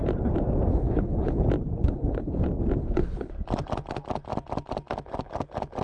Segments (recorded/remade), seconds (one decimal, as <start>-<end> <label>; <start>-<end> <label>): 0.0-0.7 recorded; 0.7-1.4 remade; 1.4-1.8 recorded; 1.8-2.4 remade; 2.4-2.8 recorded; 2.8-3.3 remade; 3.3-5.8 recorded